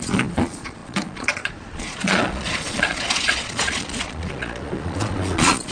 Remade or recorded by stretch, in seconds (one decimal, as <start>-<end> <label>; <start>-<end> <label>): 0.0-5.7 remade